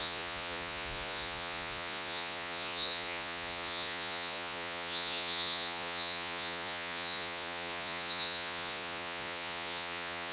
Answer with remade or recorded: remade